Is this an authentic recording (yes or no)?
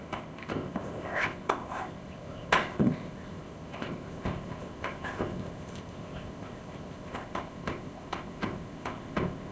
no